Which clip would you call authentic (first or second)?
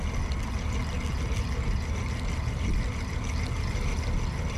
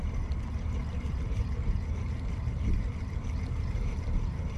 first